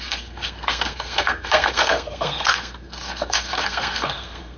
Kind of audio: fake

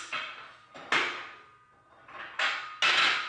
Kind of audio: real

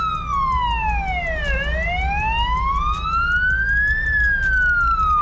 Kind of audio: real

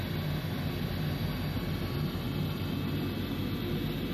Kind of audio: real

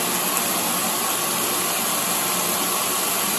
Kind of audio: real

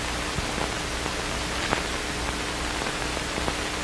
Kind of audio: real